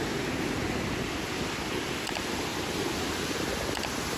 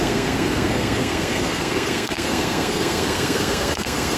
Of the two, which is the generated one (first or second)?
second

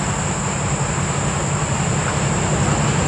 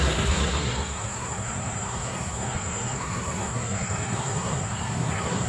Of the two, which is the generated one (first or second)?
second